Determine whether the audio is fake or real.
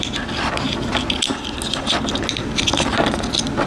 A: real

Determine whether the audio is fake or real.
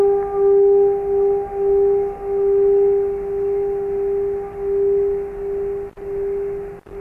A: real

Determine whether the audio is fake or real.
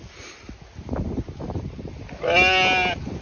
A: real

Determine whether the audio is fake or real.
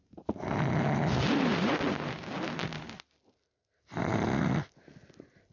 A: real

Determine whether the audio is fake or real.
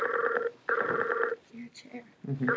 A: real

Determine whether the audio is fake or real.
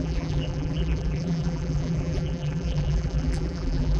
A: fake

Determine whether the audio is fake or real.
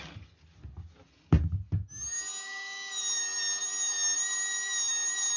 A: real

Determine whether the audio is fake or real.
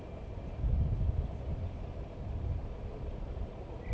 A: real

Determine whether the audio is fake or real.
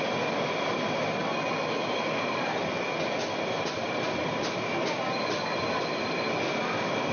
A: real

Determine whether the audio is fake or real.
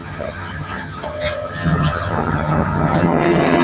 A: fake